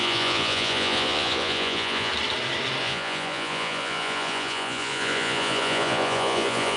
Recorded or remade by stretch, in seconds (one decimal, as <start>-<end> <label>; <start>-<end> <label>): 0.0-2.1 remade; 2.1-2.8 recorded; 2.8-6.8 remade